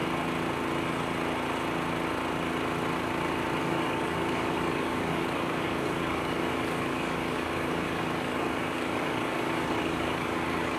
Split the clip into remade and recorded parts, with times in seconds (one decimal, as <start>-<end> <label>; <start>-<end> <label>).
0.0-3.6 recorded; 3.6-10.8 remade